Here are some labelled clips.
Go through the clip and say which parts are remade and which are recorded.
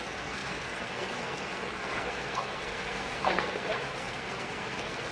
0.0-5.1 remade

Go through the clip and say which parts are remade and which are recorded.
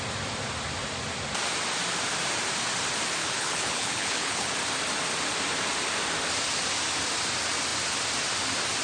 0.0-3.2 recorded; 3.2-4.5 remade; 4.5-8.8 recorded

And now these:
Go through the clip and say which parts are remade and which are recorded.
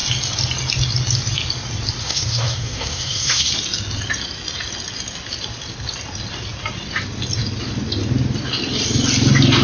0.0-2.0 recorded; 2.0-3.5 remade; 3.5-9.6 recorded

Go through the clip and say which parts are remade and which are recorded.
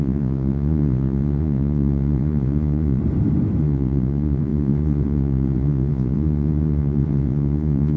0.0-3.0 remade; 3.0-3.6 recorded; 3.6-8.0 remade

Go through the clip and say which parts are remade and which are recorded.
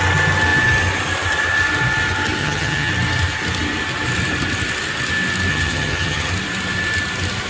0.0-2.4 recorded; 2.4-2.9 remade; 2.9-5.5 recorded; 5.5-6.3 remade; 6.3-7.5 recorded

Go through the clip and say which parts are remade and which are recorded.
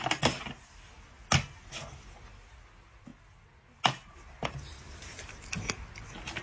0.0-6.4 recorded